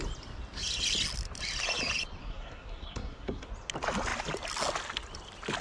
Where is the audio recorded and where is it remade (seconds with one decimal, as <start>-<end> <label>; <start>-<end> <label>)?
0.0-2.2 recorded; 2.2-3.5 remade; 3.5-5.6 recorded